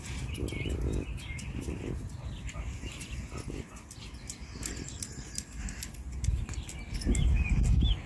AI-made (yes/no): no